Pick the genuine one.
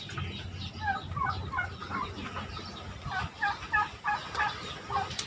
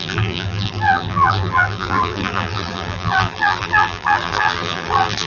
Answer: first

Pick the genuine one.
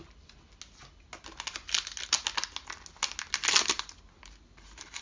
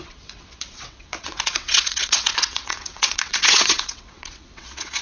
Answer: first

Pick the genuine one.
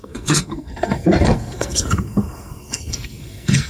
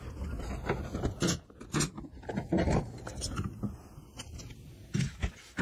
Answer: second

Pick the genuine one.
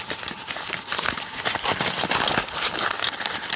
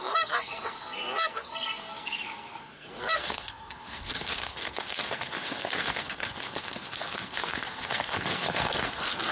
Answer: first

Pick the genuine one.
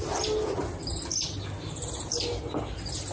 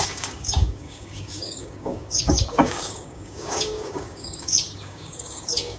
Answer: first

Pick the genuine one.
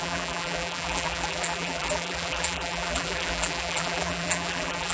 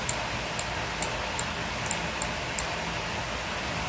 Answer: second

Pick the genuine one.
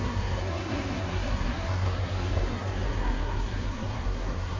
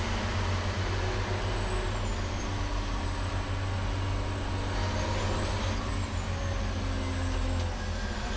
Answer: second